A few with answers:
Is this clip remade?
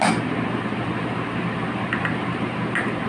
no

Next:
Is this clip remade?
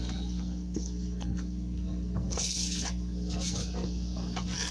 yes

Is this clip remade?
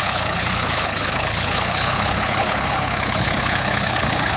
yes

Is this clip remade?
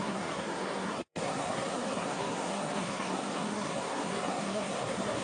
yes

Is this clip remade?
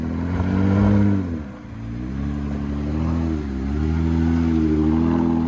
no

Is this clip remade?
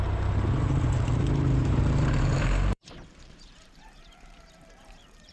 yes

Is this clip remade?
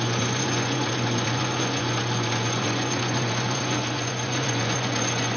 yes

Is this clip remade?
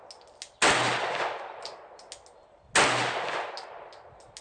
no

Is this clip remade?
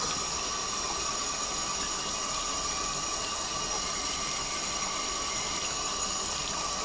no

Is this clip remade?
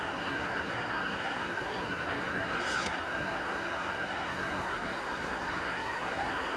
yes